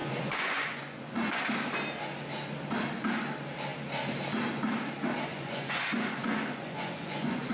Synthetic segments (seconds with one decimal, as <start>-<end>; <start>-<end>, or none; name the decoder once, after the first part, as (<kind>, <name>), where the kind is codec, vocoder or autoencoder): 0.0-1.4 (vocoder, Vocos); 5.3-7.5